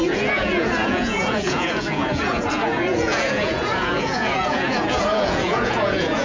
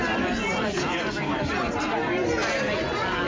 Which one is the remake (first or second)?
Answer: first